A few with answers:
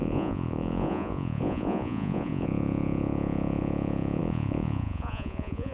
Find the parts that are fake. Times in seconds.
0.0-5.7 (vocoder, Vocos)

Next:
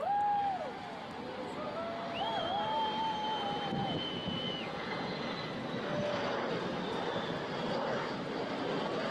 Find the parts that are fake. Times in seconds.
3.8-5.1 (vocoder, Vocos)

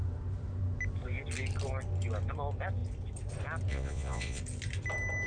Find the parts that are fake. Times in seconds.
3.7-4.4 (vocoder, Vocos)

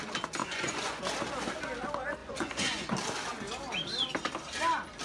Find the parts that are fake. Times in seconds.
0.4-1.0 (vocoder, Vocos); 2.2-2.9

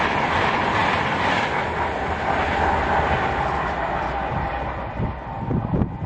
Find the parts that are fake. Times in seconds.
none

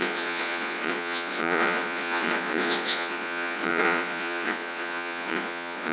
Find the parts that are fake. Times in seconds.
0.0-5.9 (vocoder, Vocos)